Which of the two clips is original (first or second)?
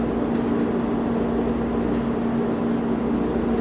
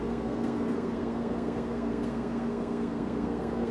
first